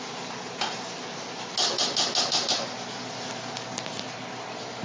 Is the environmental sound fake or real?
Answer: real